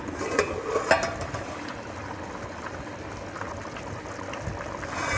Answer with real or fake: real